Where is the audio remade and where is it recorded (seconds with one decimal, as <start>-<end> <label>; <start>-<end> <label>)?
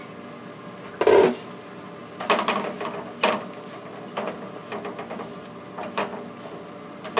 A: 0.0-7.2 recorded